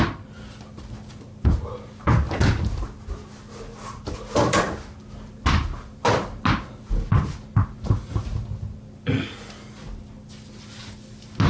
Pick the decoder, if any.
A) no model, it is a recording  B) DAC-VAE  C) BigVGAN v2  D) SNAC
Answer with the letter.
A